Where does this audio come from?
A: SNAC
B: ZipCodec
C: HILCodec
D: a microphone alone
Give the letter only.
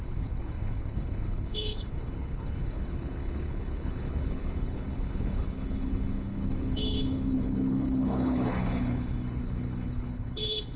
C